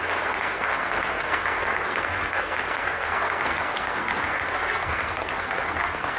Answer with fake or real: fake